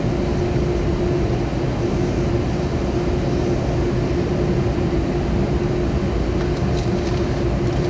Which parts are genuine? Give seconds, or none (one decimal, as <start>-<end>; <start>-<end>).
0.0-7.9